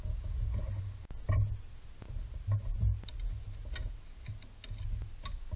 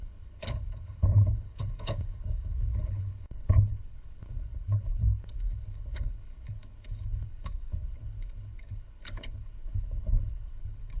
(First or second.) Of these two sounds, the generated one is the second